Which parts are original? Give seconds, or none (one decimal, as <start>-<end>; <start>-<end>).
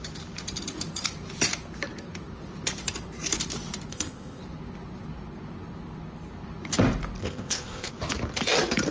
0.0-3.9; 4.4-7.2; 7.9-8.9